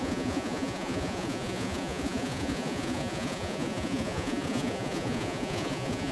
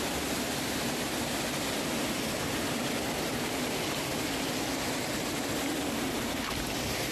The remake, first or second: first